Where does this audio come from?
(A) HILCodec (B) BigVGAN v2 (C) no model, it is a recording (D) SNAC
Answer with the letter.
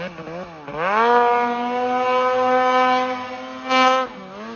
C